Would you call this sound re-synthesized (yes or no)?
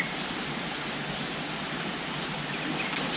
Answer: no